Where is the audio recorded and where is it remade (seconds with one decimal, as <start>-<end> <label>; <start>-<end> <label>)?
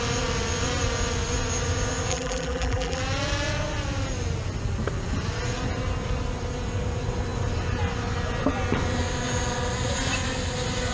0.0-2.1 recorded; 2.1-3.0 remade; 3.0-10.9 recorded